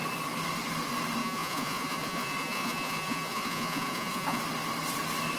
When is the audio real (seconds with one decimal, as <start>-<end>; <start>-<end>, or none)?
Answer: 0.0-1.2; 4.4-5.4